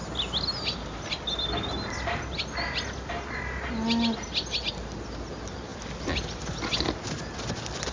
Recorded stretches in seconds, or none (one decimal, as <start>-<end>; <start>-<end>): 0.0-7.9